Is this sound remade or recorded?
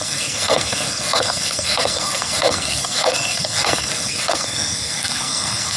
remade